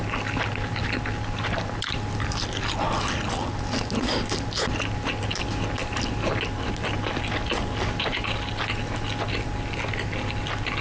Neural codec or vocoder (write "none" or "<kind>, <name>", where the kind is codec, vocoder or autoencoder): none